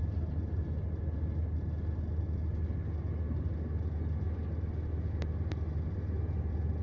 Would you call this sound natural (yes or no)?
yes